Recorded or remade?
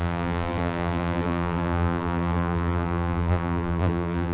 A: remade